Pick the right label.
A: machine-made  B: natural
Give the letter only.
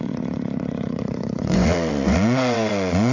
A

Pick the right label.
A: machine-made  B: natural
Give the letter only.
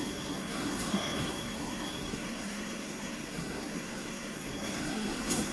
A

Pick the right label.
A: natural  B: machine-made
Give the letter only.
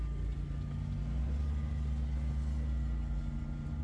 A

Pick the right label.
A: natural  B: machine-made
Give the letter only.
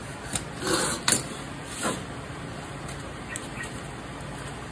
A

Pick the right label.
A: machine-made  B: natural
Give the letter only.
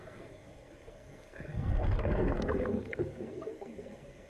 A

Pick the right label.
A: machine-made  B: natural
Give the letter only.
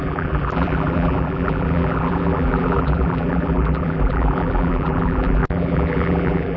A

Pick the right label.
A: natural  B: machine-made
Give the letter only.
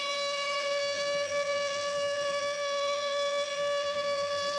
B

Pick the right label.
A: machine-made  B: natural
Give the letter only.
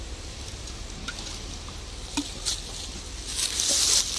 B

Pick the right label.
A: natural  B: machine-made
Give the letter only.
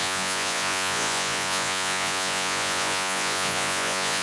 B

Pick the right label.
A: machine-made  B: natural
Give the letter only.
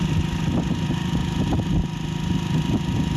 B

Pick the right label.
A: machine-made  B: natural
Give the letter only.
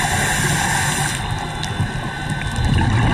B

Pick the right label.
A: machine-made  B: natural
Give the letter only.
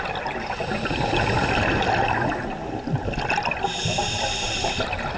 B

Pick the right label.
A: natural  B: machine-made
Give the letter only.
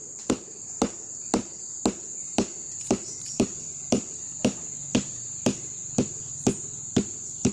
A